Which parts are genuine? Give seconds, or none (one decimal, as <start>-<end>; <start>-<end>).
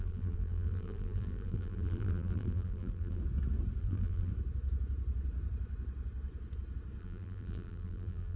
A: 3.2-3.8; 4.3-7.0